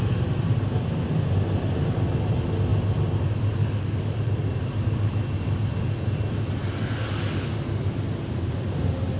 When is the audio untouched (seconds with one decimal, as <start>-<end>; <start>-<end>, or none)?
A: 0.0-3.6; 4.2-9.2